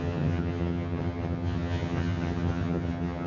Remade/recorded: remade